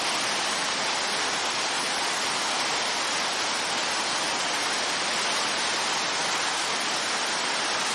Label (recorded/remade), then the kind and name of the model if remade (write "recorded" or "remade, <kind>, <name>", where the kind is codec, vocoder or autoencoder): recorded